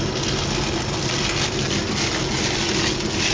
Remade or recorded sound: recorded